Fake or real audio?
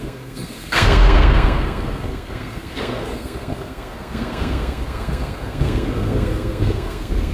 fake